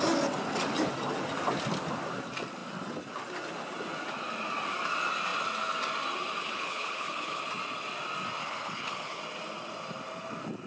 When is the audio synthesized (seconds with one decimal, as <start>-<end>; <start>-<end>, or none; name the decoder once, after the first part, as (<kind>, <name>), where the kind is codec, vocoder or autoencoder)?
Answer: 6.4-7.4 (codec, HILCodec); 8.4-9.2